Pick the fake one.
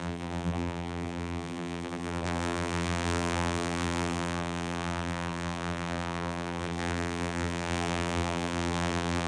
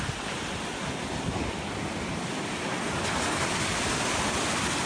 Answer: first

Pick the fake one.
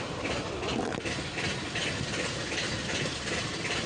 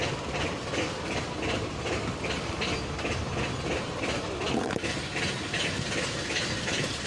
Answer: first